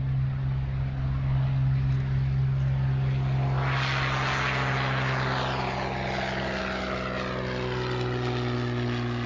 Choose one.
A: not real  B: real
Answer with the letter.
B